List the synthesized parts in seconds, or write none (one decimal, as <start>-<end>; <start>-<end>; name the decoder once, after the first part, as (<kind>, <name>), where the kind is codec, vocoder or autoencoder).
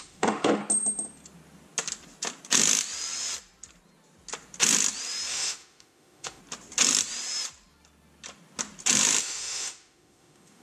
0.0-0.6 (autoencoder, DAC-VAE); 5.3-6.4; 9.2-10.6